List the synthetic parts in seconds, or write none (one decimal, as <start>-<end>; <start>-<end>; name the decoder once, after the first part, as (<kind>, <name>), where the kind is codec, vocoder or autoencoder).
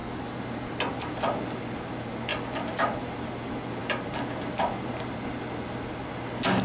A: none